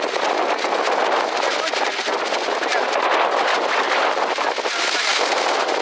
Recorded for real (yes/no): yes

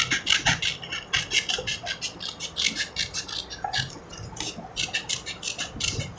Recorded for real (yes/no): yes